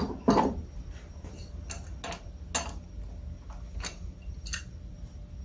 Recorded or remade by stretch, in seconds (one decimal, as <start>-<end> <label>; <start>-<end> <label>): 0.0-5.4 recorded